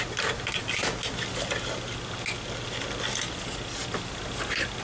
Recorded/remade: recorded